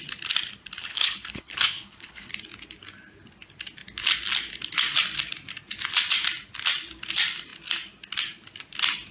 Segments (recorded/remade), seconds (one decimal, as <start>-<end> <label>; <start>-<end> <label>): 0.0-0.8 recorded; 0.8-2.3 remade; 2.3-9.1 recorded